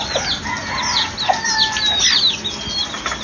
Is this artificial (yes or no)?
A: no